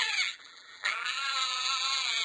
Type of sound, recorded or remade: remade